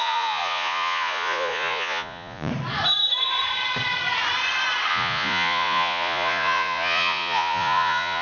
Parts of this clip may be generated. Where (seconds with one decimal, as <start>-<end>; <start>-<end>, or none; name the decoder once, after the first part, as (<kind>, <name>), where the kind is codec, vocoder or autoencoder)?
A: 0.0-2.5 (vocoder, Vocos); 4.9-8.2

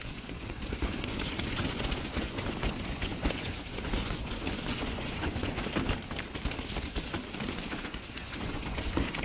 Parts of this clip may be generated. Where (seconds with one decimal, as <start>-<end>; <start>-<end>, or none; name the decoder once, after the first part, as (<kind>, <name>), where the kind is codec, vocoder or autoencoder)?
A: 0.0-5.7 (vocoder, Vocos); 7.5-9.2

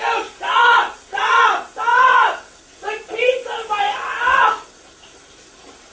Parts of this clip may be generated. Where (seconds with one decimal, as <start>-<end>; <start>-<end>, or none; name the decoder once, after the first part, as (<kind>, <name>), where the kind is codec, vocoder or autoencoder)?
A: 0.5-1.5 (vocoder, WaveNeXt); 1.9-2.6

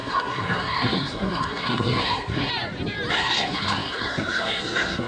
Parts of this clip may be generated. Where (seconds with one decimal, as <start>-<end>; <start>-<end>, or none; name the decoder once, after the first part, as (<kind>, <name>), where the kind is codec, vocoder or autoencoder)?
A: 0.0-2.5 (codec, SNAC); 3.1-5.1

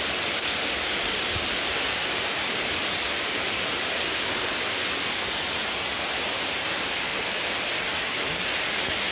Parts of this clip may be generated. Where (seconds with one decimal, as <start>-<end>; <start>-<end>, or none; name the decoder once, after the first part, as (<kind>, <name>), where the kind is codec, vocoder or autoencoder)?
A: none

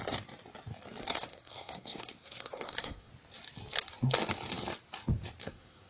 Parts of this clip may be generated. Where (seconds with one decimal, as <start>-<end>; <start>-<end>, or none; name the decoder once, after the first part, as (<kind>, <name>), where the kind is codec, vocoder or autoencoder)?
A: 1.0-3.1 (codec, SNAC); 5.4-5.9